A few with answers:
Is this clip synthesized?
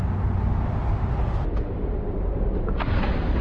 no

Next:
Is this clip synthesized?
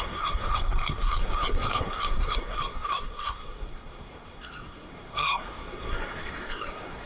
yes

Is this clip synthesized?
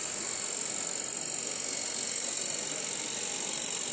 no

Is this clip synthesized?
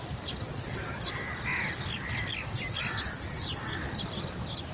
no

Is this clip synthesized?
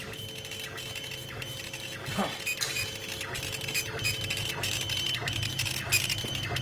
no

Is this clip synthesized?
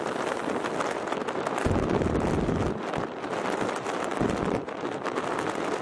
no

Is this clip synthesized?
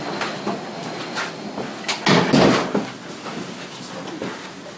no